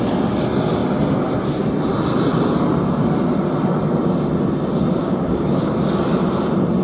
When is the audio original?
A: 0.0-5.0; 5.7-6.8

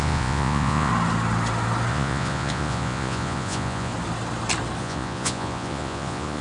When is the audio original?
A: 0.9-1.9; 3.9-4.8

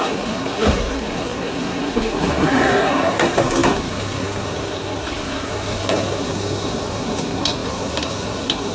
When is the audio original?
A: none

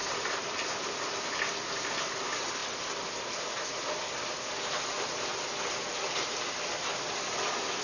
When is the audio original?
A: 0.0-7.8

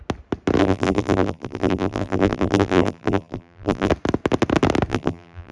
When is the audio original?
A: 0.0-0.6; 3.9-4.9